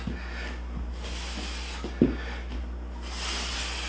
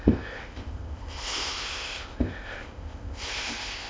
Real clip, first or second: first